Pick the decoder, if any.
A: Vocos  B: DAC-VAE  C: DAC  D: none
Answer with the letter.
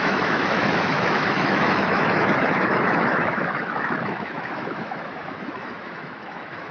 B